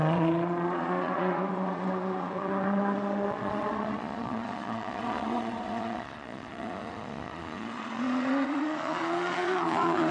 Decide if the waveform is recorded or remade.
remade